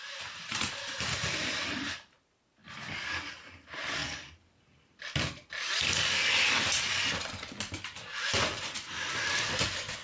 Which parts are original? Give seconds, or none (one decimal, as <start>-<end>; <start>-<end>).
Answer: 2.6-3.3; 4.0-8.4